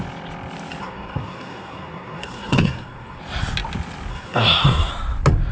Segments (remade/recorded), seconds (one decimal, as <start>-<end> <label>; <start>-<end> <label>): 0.0-0.8 recorded; 0.8-3.2 remade; 3.2-4.1 recorded; 4.1-4.9 remade; 4.9-5.5 recorded